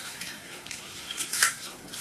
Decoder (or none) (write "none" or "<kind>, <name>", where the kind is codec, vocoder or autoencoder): codec, SNAC